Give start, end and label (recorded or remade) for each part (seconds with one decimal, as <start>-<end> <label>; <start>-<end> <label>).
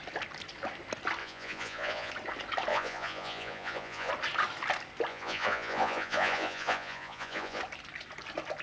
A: 0.0-1.2 recorded; 1.2-2.1 remade; 2.1-2.7 recorded; 2.7-4.1 remade; 4.1-5.1 recorded; 5.1-7.6 remade; 7.6-8.6 recorded